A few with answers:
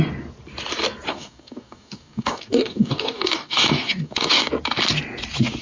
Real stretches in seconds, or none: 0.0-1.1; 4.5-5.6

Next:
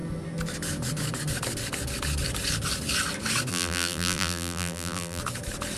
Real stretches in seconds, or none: 0.0-3.5; 5.2-5.8

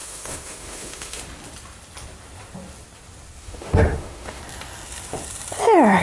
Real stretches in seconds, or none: 1.2-3.4; 4.4-6.0

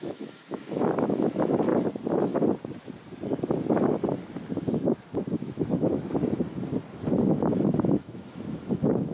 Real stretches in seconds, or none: 1.7-5.4; 6.1-7.3

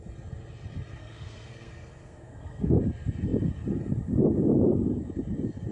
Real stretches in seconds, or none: 0.0-1.0; 2.8-5.7

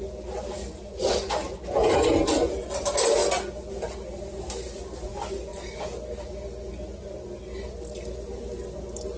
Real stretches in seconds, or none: 0.0-9.2

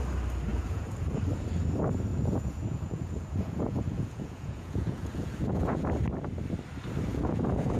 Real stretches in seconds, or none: 0.0-0.5; 1.2-2.1; 5.8-7.1